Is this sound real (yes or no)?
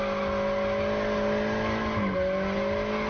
yes